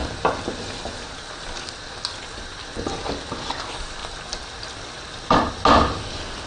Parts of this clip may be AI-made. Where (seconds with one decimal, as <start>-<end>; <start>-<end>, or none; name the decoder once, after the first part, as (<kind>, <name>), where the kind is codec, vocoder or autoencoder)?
none